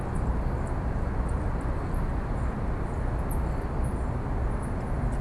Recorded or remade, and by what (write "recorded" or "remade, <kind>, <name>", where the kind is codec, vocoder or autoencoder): recorded